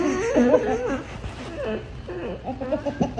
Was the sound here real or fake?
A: real